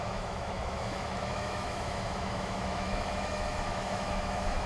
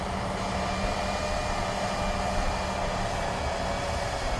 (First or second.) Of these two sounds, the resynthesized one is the first